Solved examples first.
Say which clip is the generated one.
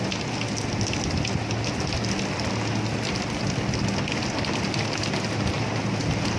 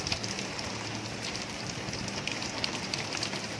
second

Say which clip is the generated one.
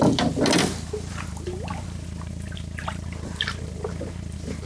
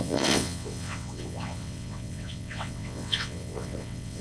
second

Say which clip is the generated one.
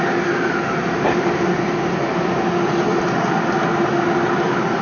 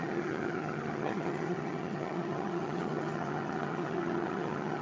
second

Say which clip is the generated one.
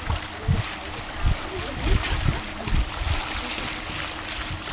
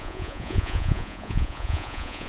second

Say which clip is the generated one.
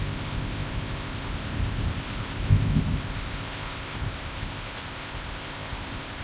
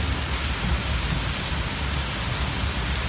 first